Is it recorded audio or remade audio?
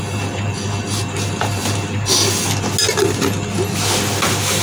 recorded